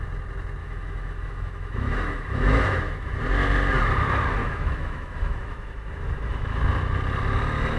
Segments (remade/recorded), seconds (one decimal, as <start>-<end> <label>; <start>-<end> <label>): 0.0-0.6 recorded; 0.6-3.2 remade; 3.2-4.4 recorded; 4.4-6.6 remade; 6.6-7.8 recorded